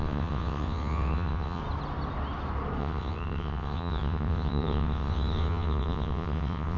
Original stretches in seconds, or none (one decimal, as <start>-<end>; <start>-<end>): 1.6-2.8

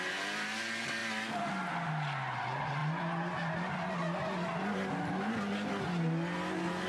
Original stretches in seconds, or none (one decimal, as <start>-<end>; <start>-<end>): 0.0-6.9

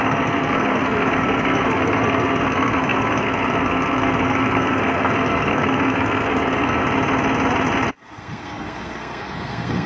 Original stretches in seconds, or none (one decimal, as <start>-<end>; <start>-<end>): 6.8-7.9

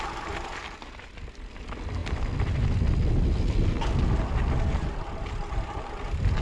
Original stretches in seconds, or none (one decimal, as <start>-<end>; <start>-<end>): 0.0-6.4

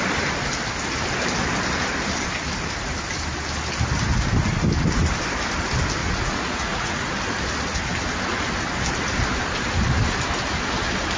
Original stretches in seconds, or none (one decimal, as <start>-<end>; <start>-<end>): 0.0-6.0; 7.1-11.2

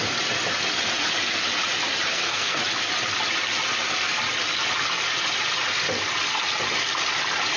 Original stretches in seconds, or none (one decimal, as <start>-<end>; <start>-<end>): 0.0-2.1; 2.6-7.6

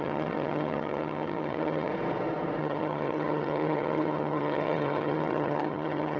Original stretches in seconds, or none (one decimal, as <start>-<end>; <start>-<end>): 1.9-2.6

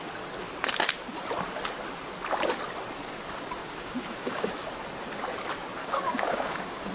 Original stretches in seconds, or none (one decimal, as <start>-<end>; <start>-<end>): 0.0-3.6; 4.5-5.8